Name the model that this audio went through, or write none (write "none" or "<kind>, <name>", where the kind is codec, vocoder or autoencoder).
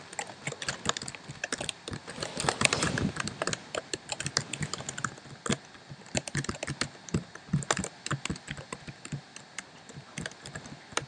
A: none